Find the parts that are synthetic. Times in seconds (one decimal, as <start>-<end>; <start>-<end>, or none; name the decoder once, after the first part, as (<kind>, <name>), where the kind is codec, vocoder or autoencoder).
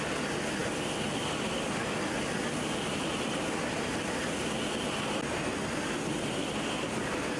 none